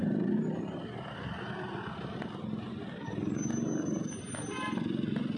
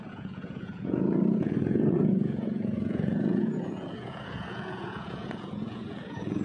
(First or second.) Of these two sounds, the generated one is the second